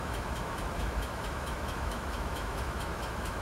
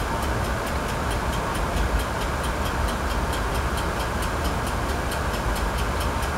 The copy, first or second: first